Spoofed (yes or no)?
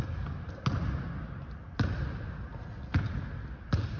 no